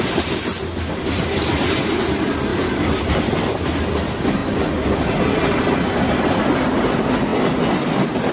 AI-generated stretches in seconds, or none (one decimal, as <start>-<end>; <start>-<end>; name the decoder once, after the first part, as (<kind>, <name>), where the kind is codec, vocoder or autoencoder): none